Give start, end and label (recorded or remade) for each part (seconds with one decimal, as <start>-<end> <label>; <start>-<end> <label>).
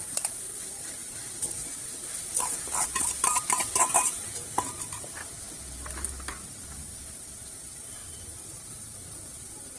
0.0-5.2 remade; 5.2-6.6 recorded; 6.6-9.8 remade